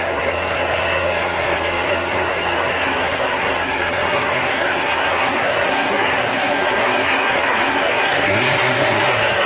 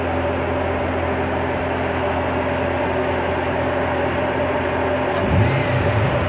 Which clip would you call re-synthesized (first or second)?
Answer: first